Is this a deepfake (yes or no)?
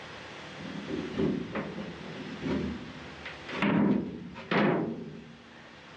no